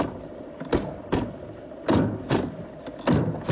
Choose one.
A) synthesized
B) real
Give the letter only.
B